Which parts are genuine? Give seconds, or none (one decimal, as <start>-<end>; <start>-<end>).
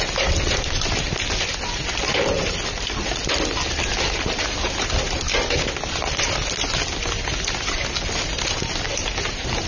0.0-9.7